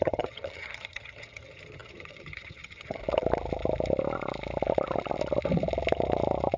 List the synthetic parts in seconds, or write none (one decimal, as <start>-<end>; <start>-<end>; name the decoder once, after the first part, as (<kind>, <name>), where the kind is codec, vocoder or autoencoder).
0.0-3.0 (vocoder, HiFi-GAN)